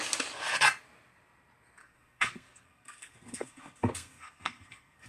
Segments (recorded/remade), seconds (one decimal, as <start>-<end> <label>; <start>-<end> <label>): 0.0-1.8 recorded; 1.8-5.1 remade